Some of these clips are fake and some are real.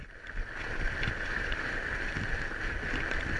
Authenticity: real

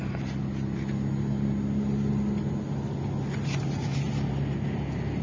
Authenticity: real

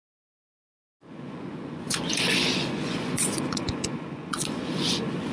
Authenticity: fake